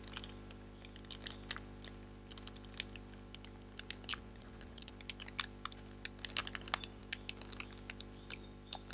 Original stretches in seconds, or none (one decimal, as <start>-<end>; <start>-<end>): 0.0-4.1; 4.9-8.9

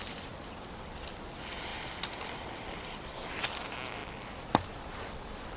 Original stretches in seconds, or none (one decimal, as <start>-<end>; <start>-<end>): 0.0-5.6